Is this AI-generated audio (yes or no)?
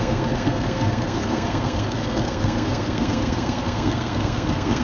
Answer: yes